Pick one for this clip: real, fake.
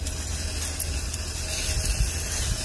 real